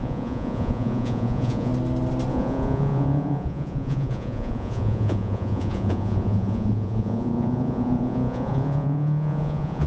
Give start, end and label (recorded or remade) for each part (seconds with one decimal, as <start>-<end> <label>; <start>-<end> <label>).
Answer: 0.0-1.7 remade; 1.7-2.3 recorded; 2.3-9.9 remade